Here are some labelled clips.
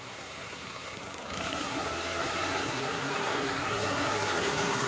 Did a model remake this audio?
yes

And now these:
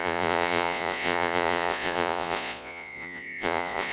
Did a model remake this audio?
yes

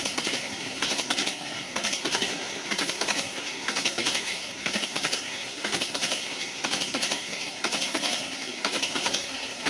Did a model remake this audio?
yes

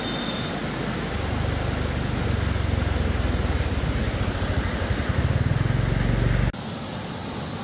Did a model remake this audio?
no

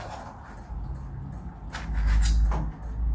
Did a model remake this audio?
no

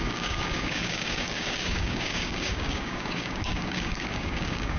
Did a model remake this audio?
yes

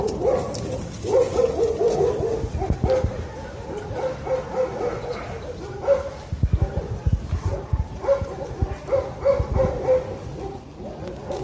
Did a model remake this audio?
no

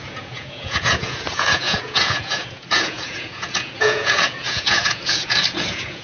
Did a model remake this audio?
yes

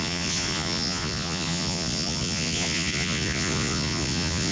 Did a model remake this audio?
yes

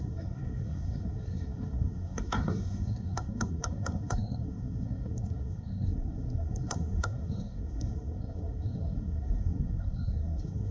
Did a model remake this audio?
yes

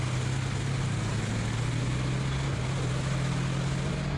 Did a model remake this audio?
no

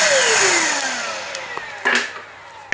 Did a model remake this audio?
no